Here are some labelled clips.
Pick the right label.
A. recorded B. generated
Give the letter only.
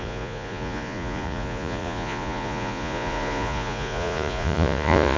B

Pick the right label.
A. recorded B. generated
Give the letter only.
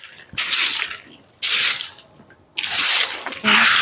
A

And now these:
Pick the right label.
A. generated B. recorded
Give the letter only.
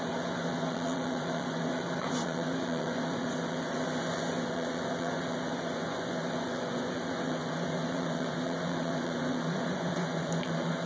A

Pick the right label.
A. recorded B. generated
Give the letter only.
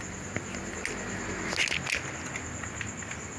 A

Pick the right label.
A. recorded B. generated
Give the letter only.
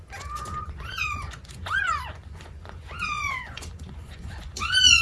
B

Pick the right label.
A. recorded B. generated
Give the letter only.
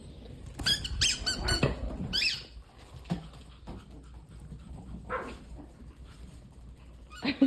A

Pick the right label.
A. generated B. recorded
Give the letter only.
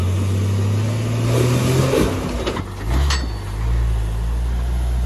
B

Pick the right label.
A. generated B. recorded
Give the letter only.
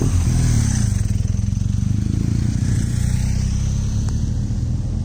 B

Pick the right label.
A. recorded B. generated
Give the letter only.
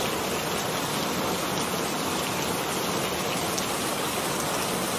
A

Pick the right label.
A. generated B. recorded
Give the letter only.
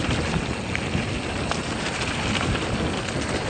B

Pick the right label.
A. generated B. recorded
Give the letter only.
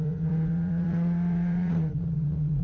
A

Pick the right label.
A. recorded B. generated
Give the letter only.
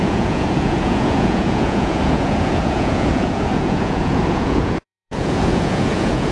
B